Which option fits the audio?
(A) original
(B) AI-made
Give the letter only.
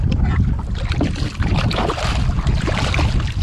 A